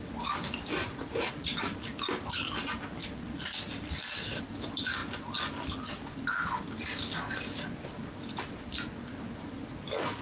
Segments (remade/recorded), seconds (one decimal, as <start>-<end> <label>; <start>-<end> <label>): 0.0-0.8 recorded; 0.8-1.3 remade; 1.3-10.2 recorded

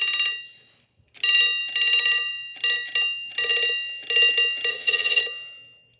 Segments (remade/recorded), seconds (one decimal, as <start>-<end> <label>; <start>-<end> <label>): 0.0-4.7 recorded; 4.7-5.2 remade; 5.2-6.0 recorded